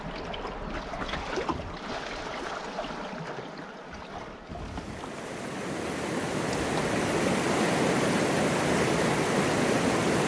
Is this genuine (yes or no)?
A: yes